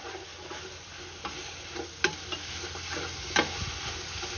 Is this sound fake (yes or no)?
no